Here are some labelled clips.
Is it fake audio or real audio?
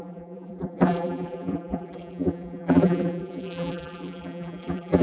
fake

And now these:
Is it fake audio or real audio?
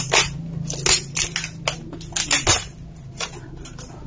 real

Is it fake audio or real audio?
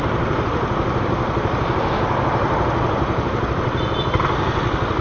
real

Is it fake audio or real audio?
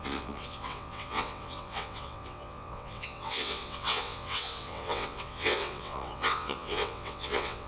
fake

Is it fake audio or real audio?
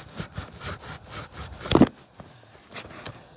real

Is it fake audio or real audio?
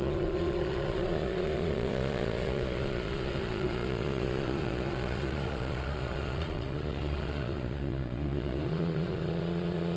fake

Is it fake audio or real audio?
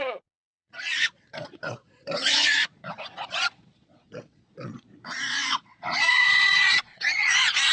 fake